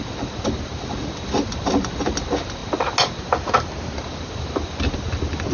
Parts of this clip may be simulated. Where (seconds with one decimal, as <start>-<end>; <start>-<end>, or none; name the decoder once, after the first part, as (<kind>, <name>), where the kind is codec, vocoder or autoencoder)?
none